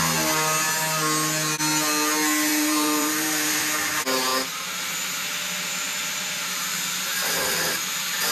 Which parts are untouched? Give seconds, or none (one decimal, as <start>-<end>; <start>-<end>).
0.0-2.5; 3.6-6.0; 6.8-8.3